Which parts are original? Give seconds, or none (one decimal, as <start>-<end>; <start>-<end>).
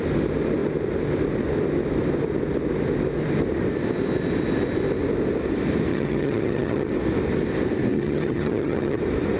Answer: 0.0-5.9; 6.9-7.9; 9.0-9.4